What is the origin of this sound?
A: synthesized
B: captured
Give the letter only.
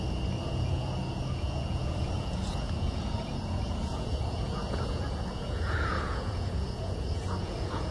A